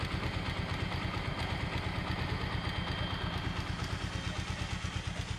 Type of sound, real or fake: real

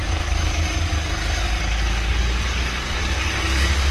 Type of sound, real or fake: fake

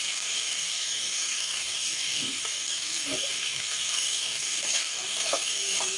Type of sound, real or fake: fake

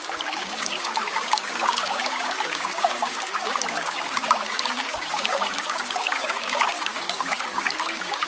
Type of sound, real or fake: fake